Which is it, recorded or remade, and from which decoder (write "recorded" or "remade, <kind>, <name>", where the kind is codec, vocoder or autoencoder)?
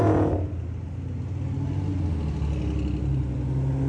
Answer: recorded